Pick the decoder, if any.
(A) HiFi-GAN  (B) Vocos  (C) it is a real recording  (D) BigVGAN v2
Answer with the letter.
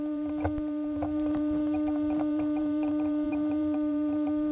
D